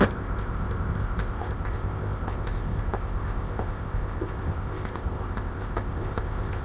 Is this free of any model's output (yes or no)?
no